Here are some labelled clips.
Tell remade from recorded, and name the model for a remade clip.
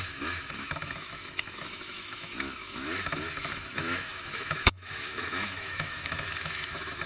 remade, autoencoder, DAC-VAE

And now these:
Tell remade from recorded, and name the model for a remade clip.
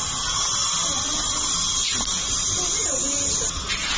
recorded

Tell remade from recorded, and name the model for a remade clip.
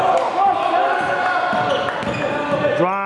recorded